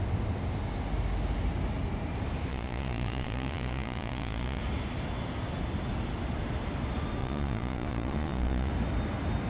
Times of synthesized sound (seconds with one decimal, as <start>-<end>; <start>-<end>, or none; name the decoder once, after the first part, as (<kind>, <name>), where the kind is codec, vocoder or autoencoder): 2.5-4.6 (vocoder, Vocos); 7.2-8.7